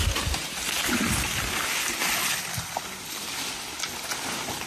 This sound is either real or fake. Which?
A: real